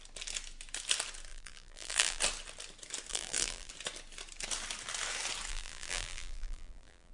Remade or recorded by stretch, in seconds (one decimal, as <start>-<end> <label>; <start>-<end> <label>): 0.0-1.3 recorded; 1.3-2.2 remade; 2.2-3.1 recorded; 3.1-3.7 remade; 3.7-5.5 recorded; 5.5-7.1 remade